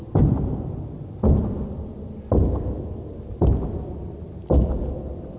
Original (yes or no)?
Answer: yes